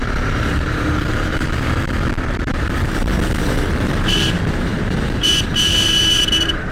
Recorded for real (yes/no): no